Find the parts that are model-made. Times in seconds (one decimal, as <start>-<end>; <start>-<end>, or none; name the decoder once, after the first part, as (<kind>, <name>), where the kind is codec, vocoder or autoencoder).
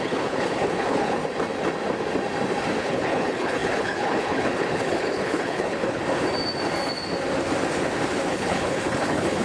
0.0-1.2 (codec, HILCodec); 2.8-6.0; 8.3-9.4